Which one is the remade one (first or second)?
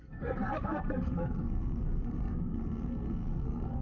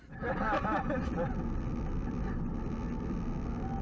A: first